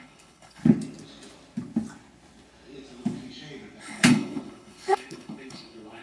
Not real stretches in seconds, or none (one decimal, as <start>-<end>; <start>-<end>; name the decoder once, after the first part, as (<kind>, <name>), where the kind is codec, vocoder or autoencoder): 0.0-0.6 (codec, HILCodec); 3.8-6.0